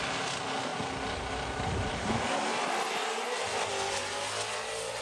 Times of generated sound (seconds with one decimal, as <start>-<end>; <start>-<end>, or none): none